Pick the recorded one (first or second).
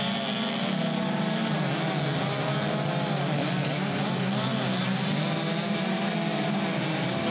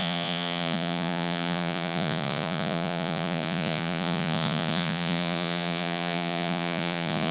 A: first